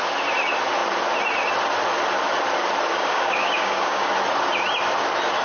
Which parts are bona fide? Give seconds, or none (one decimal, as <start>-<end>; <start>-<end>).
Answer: 0.0-2.9; 4.1-5.4